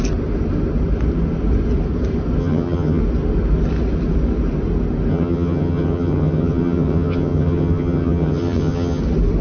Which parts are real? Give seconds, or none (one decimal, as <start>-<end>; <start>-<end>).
0.0-2.4; 3.0-5.1; 9.0-9.4